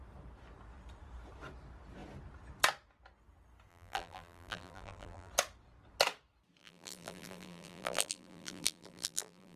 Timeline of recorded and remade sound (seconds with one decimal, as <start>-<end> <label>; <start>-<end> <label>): 0.0-3.7 recorded; 3.7-5.3 remade; 5.3-6.6 recorded; 6.6-9.6 remade